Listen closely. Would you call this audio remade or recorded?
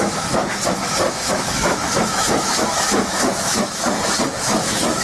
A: remade